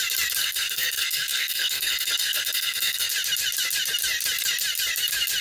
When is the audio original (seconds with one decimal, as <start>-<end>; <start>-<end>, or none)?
0.0-0.4; 3.1-5.4